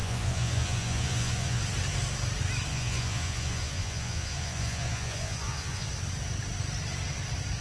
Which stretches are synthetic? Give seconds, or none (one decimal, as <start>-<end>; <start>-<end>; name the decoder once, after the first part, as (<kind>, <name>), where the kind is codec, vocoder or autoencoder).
0.0-1.6 (vocoder, Vocos); 2.7-5.9